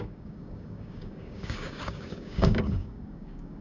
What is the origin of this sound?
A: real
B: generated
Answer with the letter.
B